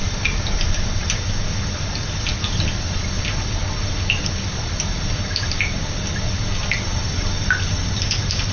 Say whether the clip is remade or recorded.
recorded